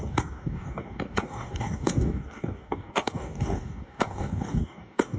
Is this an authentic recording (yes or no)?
no